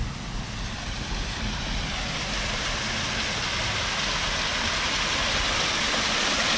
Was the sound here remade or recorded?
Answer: recorded